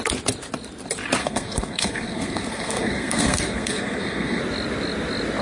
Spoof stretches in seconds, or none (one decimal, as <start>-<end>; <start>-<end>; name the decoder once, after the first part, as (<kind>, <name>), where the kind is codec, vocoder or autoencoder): 1.2-4.4 (codec, SNAC)